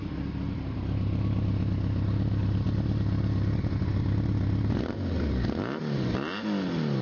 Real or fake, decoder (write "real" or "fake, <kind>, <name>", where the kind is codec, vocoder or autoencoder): real